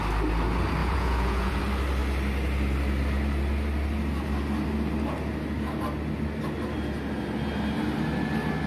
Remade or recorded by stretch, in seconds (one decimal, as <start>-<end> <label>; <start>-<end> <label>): 0.0-0.8 recorded; 0.8-1.6 remade; 1.6-8.7 recorded